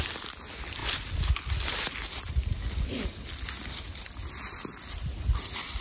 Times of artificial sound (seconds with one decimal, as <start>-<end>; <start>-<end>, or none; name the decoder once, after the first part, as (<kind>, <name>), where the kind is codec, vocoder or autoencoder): none